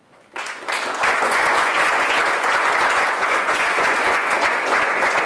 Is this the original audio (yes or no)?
no